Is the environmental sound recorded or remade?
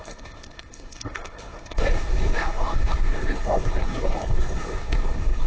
remade